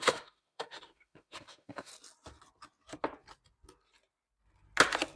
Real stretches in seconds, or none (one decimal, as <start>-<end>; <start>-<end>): 1.9-5.2